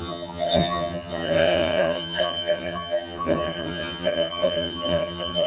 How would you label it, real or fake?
fake